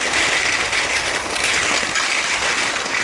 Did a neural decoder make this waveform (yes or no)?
no